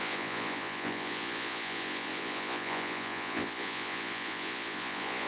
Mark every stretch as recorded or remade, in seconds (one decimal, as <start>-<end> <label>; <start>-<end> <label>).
0.0-5.3 remade